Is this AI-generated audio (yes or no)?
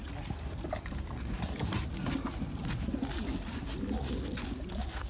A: no